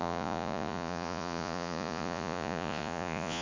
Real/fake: fake